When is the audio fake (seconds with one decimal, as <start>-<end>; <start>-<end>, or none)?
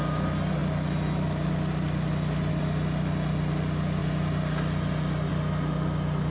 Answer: none